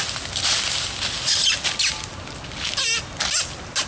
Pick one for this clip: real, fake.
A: real